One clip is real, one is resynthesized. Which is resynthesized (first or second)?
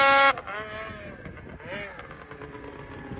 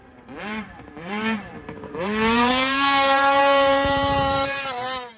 second